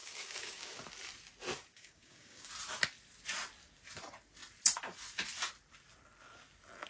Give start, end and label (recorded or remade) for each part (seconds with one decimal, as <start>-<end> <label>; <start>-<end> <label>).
0.0-0.8 remade; 0.8-1.7 recorded; 1.7-2.5 remade; 2.5-6.9 recorded